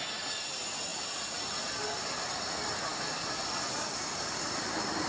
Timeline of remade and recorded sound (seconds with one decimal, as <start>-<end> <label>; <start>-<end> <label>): 0.0-5.1 recorded